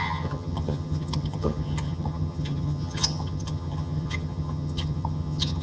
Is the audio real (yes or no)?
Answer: no